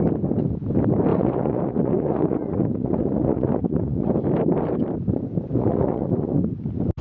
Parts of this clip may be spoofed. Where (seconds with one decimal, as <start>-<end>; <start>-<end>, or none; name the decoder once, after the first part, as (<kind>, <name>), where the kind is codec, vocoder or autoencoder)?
1.1-4.1 (vocoder, Vocos); 5.5-6.4